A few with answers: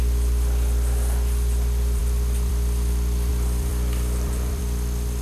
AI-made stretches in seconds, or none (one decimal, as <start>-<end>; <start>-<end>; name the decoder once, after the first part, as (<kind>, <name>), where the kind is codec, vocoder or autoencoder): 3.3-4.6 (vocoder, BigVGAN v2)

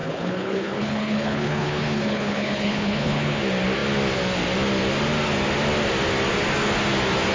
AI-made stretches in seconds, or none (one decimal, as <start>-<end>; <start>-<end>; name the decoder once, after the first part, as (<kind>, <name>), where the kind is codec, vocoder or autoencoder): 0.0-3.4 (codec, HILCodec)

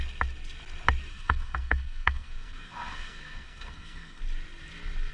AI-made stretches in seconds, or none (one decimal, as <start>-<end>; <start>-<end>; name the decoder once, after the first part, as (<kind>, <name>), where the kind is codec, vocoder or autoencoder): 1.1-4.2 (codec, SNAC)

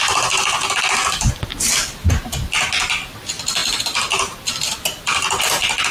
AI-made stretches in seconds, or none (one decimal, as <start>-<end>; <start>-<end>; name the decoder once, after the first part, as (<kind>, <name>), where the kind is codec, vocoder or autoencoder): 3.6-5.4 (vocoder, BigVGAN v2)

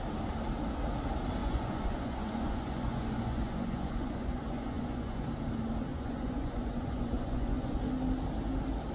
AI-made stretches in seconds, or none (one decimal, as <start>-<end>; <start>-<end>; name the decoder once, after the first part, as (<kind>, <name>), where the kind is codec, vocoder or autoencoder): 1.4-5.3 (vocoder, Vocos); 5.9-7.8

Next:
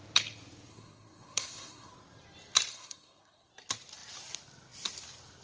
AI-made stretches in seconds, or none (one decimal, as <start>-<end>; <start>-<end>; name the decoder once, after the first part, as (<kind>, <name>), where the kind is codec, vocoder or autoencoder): 0.7-1.9 (codec, SNAC); 2.7-3.5

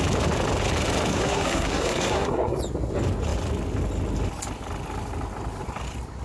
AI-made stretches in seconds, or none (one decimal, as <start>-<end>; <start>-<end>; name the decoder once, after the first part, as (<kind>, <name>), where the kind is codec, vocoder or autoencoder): 1.1-2.6 (codec, SNAC)

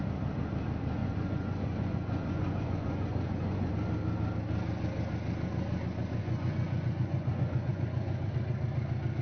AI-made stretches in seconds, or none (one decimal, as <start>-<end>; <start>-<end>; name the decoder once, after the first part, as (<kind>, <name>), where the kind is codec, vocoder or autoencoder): 1.0-3.7 (vocoder, Vocos); 6.2-8.3